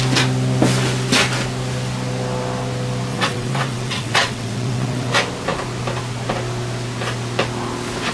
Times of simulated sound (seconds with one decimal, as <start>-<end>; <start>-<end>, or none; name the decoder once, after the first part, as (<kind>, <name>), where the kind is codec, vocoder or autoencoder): 3.1-5.1 (vocoder, WaveNeXt)